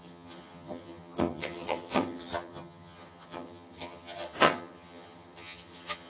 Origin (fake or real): fake